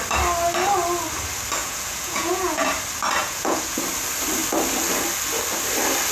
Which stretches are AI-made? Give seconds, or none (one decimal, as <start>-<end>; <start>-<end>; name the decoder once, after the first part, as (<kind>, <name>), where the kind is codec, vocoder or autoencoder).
1.6-2.7 (vocoder, Vocos); 3.2-3.8